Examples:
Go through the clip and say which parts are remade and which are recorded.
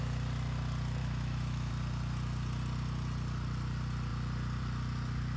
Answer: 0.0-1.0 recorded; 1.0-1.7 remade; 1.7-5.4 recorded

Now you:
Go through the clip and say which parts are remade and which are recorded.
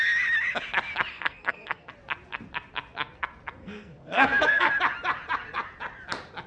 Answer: 0.0-1.1 recorded; 1.1-1.9 remade; 1.9-3.6 recorded; 3.6-4.7 remade; 4.7-6.5 recorded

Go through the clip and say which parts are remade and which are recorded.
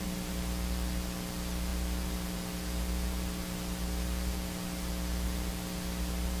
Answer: 0.0-6.4 recorded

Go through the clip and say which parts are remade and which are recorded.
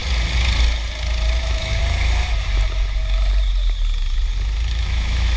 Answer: 0.0-1.4 recorded; 1.4-1.8 remade; 1.8-4.7 recorded; 4.7-5.4 remade